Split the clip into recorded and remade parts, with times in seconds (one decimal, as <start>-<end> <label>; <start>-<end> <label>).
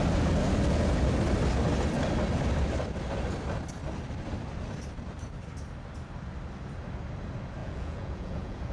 0.0-7.6 recorded; 7.6-8.7 remade